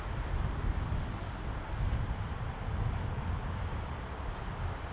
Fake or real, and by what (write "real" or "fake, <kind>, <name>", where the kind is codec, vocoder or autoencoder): real